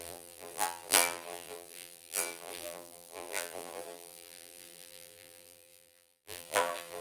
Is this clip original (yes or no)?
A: no